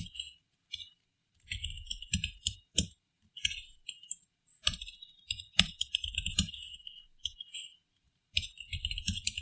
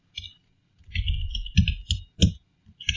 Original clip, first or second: second